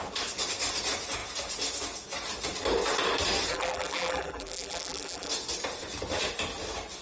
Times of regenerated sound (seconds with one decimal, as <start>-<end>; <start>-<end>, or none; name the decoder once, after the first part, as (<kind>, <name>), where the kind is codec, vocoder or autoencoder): 3.5-5.3 (vocoder, BigVGAN v2)